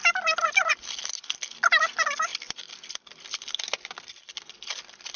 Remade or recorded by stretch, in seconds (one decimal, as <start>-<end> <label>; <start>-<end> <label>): 0.0-5.2 recorded